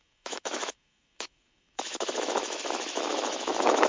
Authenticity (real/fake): fake